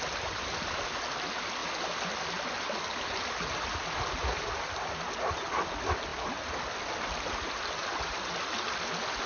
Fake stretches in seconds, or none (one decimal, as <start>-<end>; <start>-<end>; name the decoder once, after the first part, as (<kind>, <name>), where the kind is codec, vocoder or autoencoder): 6.1-6.8 (vocoder, BigVGAN v2); 7.8-8.4